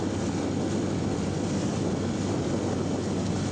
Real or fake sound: real